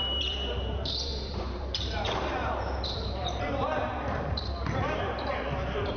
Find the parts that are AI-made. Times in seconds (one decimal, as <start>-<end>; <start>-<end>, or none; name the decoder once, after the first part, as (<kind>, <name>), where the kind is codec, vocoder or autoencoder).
0.0-6.0 (vocoder, BigVGAN v2)